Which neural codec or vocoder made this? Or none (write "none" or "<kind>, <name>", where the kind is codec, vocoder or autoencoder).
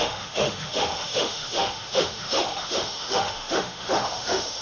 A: autoencoder, DAC-VAE